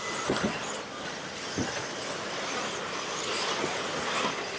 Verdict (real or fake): real